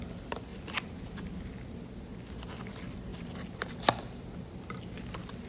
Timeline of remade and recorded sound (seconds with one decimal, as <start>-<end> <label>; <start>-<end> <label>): 0.0-5.5 recorded